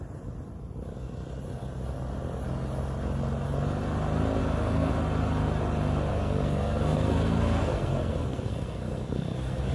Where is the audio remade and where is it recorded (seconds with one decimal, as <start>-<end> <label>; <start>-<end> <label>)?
0.0-4.4 recorded; 4.4-4.9 remade; 4.9-6.1 recorded; 6.1-9.7 remade